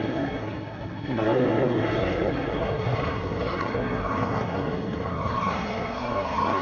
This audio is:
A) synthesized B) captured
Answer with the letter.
A